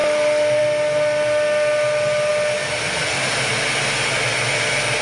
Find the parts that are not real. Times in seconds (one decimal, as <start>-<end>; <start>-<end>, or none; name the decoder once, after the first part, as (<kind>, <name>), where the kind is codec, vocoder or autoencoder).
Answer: none